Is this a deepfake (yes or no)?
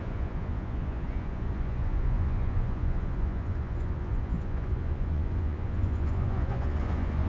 yes